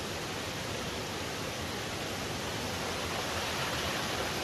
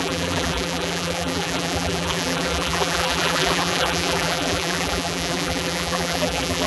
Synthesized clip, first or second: second